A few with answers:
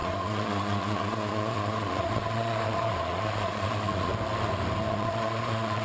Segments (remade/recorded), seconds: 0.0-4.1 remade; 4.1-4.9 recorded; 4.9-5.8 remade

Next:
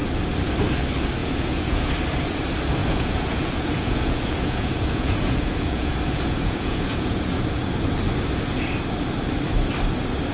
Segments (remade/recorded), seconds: 0.0-1.2 recorded; 1.2-1.9 remade; 1.9-2.8 recorded; 2.8-7.4 remade; 7.4-10.3 recorded

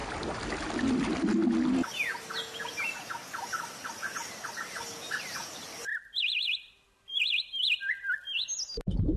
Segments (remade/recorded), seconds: 0.0-9.2 recorded

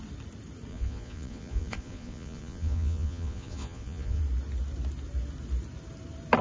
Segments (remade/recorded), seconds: 0.0-0.7 recorded; 0.7-4.2 remade; 4.2-6.4 recorded

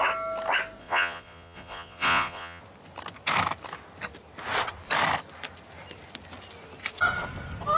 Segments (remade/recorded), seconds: 0.0-0.8 recorded; 0.8-2.6 remade; 2.6-7.8 recorded

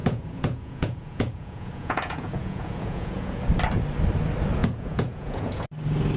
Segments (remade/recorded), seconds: 0.0-3.4 remade; 3.4-4.6 recorded; 4.6-5.7 remade; 5.7-6.2 recorded

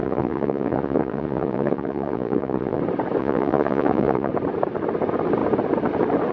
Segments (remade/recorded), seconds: 0.0-2.8 remade; 2.8-3.2 recorded; 3.2-4.3 remade; 4.3-6.3 recorded